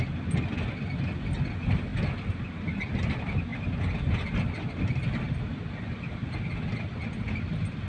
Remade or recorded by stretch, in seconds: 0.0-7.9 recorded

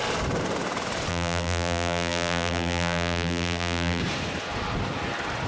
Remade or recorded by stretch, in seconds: 0.0-1.1 recorded; 1.1-4.0 remade; 4.0-5.5 recorded

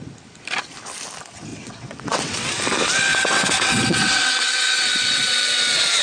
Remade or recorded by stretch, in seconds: 0.0-1.5 recorded; 1.5-2.5 remade; 2.5-3.1 recorded; 3.1-5.2 remade; 5.2-6.0 recorded

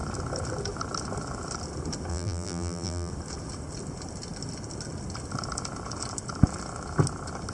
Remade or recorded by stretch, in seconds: 0.0-2.1 recorded; 2.1-3.1 remade; 3.1-7.5 recorded

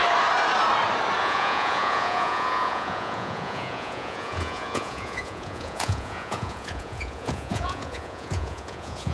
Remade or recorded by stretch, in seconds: 0.0-1.2 recorded; 1.2-9.1 remade

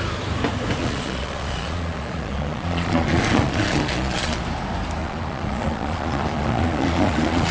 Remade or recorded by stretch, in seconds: 0.0-0.8 recorded; 0.8-4.4 remade; 4.4-5.0 recorded; 5.0-7.5 remade

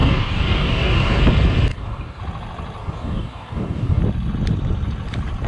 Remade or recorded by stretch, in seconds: 0.0-1.2 remade; 1.2-1.7 recorded; 1.7-2.2 remade; 2.2-2.8 recorded; 2.8-4.0 remade; 4.0-5.5 recorded